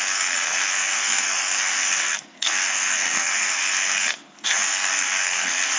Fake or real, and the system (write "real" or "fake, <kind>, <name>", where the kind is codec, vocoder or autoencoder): fake, codec, SNAC